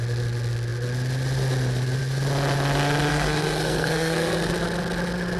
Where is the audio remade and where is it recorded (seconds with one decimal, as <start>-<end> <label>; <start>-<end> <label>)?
0.0-3.1 recorded; 3.1-4.5 remade; 4.5-5.4 recorded